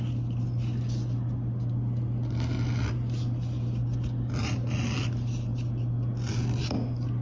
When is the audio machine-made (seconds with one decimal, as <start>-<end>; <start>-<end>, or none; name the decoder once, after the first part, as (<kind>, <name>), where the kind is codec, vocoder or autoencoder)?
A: none